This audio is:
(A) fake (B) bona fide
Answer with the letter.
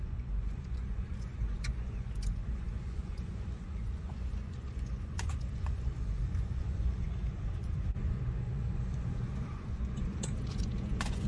A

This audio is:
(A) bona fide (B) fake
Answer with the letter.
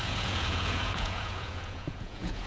B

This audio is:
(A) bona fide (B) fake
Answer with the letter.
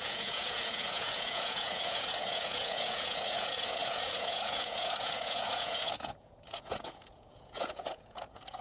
B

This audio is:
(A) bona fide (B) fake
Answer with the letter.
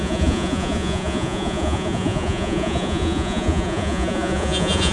B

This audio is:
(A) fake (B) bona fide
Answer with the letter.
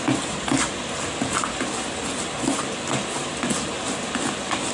B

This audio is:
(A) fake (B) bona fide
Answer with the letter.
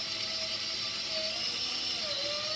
B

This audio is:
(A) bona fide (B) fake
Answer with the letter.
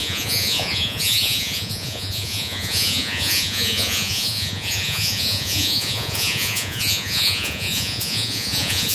B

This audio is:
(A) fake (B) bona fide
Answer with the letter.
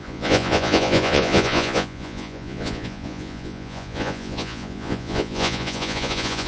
A